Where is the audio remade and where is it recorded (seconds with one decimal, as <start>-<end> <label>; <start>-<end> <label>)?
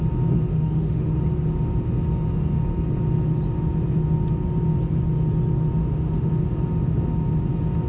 0.0-0.5 recorded; 0.5-1.2 remade; 1.2-5.8 recorded; 5.8-6.3 remade; 6.3-7.9 recorded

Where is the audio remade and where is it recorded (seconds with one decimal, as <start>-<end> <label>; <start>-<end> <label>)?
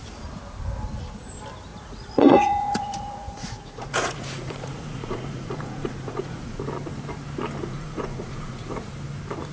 0.0-1.7 recorded; 1.7-6.6 remade; 6.6-7.6 recorded; 7.6-8.8 remade; 8.8-9.5 recorded